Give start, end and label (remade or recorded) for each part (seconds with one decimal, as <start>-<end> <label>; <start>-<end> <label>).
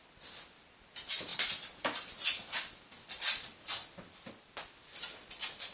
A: 0.0-5.7 recorded